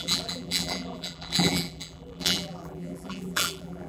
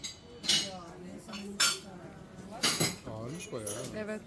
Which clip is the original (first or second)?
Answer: second